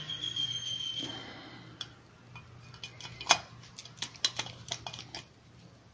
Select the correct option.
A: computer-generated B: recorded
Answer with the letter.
B